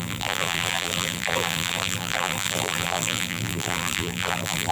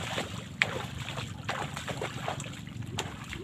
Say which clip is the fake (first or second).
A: first